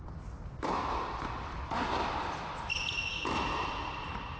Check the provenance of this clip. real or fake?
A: real